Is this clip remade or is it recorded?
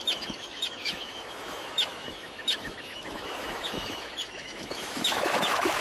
remade